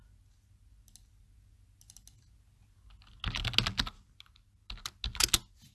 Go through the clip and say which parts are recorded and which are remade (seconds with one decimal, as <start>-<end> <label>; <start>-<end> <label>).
0.0-5.7 recorded